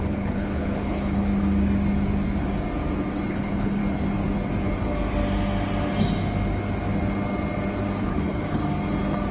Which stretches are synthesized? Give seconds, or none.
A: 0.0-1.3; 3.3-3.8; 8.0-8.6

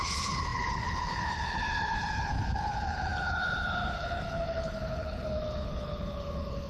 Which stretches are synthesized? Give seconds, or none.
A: 0.0-6.7

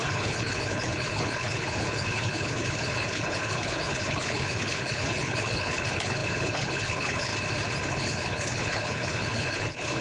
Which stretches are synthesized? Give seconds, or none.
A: 0.0-7.3; 7.9-10.0

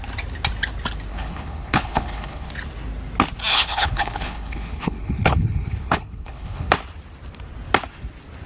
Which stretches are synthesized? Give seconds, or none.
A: 1.1-2.5; 3.5-6.7